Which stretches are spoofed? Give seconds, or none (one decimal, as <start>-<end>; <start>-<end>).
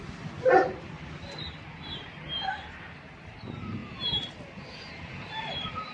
none